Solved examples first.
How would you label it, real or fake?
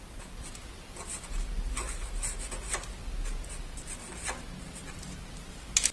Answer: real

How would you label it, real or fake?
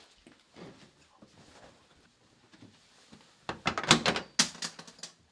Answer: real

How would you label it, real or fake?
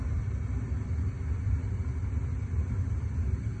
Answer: real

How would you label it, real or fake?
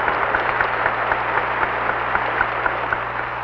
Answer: real